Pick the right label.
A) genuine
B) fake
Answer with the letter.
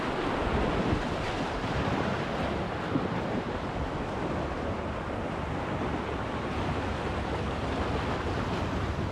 A